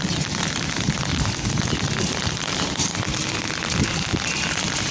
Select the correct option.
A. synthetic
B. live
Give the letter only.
B